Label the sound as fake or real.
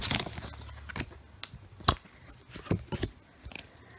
real